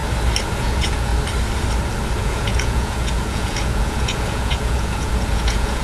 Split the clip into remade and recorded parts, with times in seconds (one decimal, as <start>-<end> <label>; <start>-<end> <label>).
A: 0.0-0.6 recorded; 0.6-1.1 remade; 1.1-2.2 recorded; 2.2-5.8 remade